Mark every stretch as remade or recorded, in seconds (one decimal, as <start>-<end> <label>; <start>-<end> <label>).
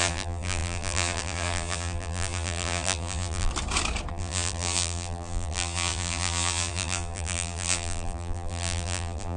0.0-3.5 remade; 3.5-4.1 recorded; 4.1-9.4 remade